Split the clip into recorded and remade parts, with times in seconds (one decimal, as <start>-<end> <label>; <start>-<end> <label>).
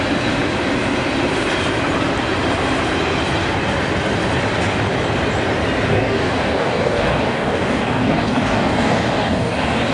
0.0-5.9 recorded; 5.9-9.9 remade